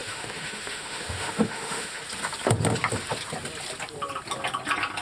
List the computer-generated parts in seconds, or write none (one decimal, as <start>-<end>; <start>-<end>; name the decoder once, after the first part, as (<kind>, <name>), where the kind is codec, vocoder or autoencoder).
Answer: 0.0-2.0 (autoencoder, DAC-VAE)